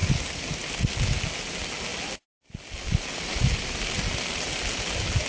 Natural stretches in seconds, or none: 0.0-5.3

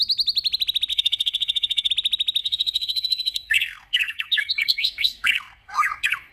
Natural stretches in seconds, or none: 0.0-0.9; 1.9-2.4

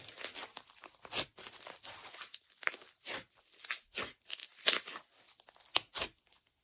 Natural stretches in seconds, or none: 0.0-6.6

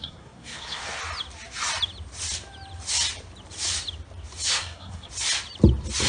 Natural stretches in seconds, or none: 0.8-4.5; 5.1-6.1

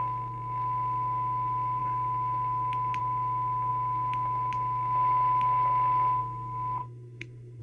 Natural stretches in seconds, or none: 0.0-6.8

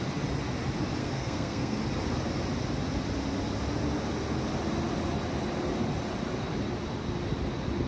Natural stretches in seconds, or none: 0.0-1.0; 1.8-7.9

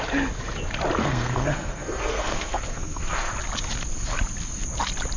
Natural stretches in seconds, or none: 0.0-1.0; 3.3-5.2